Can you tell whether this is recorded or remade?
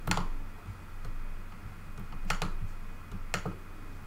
recorded